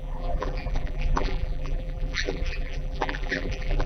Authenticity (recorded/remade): remade